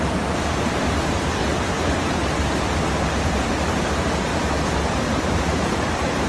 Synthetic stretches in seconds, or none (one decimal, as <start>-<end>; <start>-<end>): 0.0-1.4; 3.1-6.3